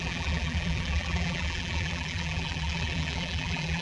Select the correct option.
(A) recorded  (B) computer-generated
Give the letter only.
B